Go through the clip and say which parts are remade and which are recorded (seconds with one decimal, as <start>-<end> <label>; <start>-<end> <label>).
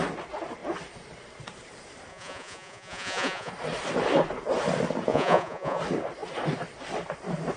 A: 0.0-2.1 recorded; 2.1-3.5 remade; 3.5-5.1 recorded; 5.1-5.8 remade; 5.8-7.6 recorded